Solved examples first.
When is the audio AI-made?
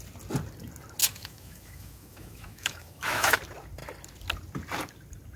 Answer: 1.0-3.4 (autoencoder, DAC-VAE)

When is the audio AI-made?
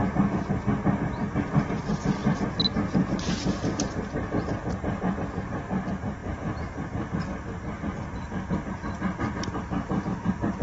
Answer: 1.2-2.2 (vocoder, BigVGAN v2); 5.4-10.6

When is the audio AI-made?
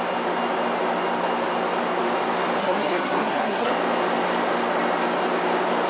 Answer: 2.6-3.7 (codec, SNAC)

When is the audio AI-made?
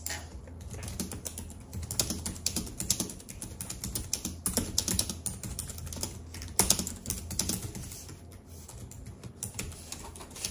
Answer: none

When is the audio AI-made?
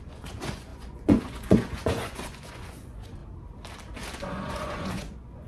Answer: 0.0-3.2 (vocoder, Vocos); 4.1-5.5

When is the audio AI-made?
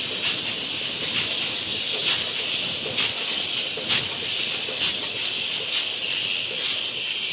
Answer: none